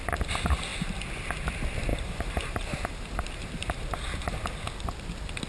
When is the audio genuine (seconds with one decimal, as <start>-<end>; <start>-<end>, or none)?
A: 0.0-1.9; 4.5-5.5